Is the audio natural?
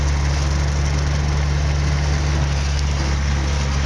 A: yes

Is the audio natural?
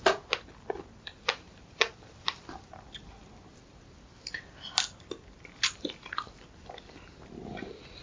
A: yes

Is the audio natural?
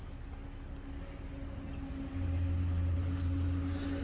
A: yes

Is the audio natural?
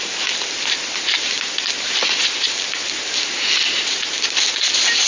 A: yes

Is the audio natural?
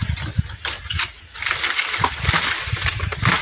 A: yes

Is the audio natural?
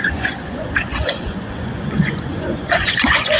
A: no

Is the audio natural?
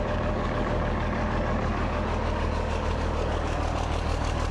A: no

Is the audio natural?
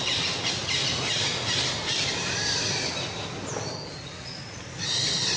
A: yes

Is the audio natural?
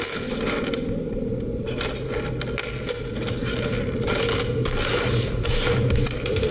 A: yes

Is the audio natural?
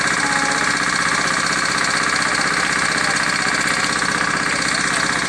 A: yes